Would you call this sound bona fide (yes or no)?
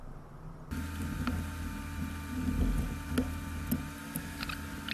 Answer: yes